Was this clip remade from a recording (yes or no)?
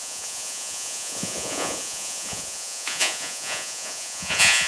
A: yes